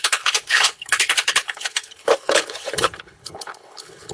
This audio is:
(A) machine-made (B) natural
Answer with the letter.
A